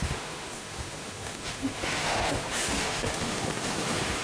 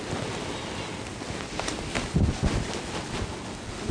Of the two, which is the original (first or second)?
second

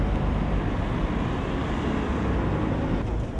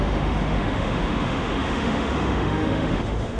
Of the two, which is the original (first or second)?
first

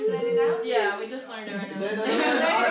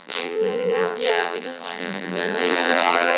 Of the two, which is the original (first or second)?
first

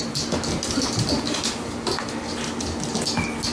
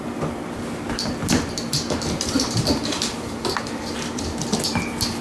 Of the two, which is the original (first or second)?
first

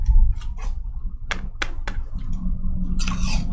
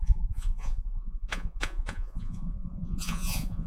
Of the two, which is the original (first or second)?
first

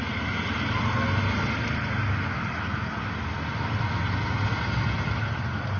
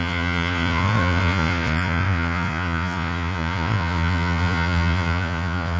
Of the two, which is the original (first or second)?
first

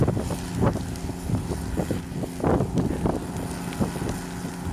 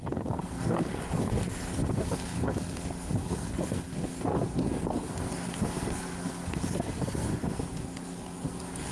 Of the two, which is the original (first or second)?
first